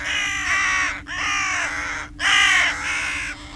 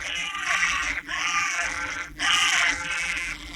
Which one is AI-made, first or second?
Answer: second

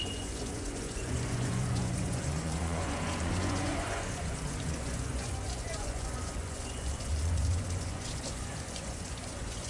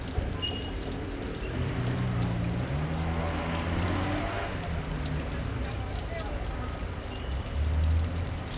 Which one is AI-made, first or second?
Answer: first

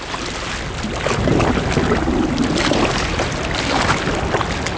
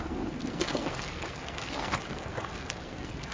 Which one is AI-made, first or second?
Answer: second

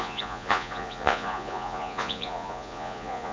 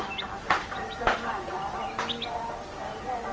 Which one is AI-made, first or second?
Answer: first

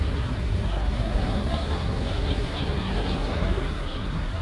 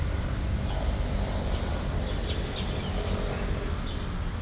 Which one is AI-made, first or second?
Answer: first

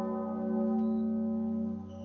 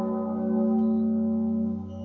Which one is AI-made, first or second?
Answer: second